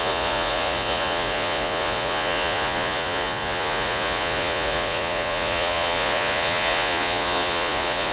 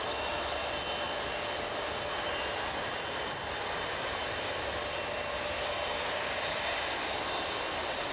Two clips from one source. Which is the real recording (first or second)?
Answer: second